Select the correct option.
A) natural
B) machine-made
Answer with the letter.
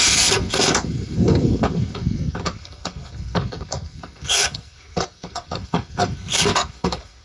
B